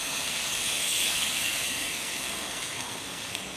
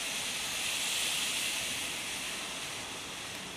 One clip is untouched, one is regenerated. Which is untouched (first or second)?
second